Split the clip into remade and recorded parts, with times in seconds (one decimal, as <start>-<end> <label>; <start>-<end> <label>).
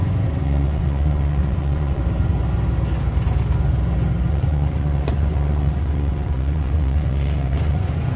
0.0-2.0 remade; 2.0-4.3 recorded; 4.3-8.2 remade